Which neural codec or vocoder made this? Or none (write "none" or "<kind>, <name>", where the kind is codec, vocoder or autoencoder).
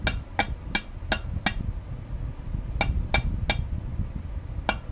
none